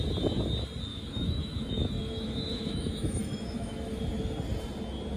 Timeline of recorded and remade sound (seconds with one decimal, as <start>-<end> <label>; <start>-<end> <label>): 0.0-0.9 recorded; 0.9-4.0 remade; 4.0-5.2 recorded